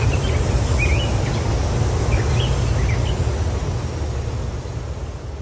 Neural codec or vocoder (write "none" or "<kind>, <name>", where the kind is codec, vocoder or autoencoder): none